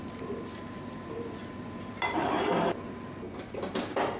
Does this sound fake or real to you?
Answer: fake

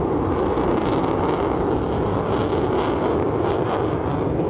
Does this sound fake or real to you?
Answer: real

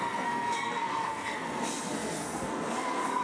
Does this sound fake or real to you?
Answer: fake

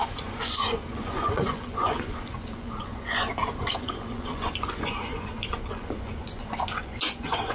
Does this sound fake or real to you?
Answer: fake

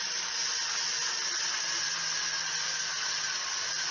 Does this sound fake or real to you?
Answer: real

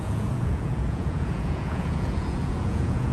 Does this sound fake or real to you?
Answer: fake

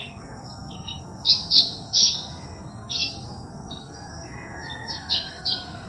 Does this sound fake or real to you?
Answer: fake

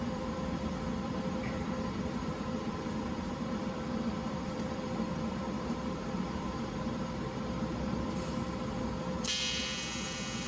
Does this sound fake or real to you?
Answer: fake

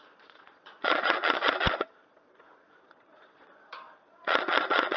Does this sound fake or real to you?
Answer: fake